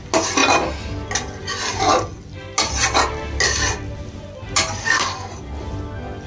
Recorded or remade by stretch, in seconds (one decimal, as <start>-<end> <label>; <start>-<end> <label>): 0.0-4.8 recorded; 4.8-5.3 remade; 5.3-6.3 recorded